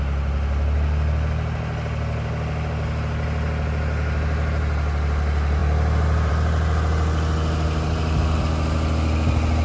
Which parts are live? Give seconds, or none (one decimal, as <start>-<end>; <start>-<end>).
0.0-9.6